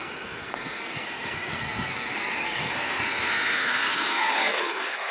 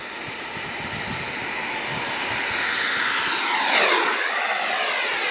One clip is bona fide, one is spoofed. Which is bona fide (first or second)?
second